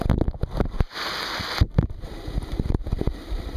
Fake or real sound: real